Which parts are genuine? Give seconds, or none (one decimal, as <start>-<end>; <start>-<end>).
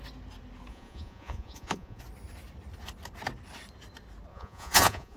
0.0-0.7; 2.0-4.3